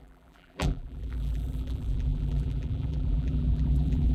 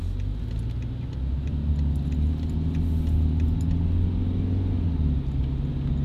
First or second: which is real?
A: second